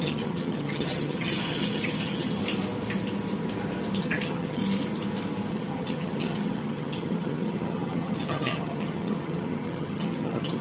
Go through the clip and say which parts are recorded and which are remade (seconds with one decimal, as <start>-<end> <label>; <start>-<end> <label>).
0.0-2.4 remade; 2.4-4.0 recorded; 4.0-4.6 remade; 4.6-5.5 recorded; 5.5-10.6 remade